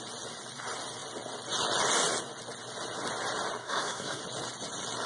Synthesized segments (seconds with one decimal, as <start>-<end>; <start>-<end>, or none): 3.6-4.2